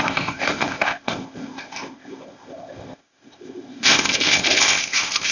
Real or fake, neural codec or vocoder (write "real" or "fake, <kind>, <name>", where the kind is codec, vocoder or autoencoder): fake, codec, ZipCodec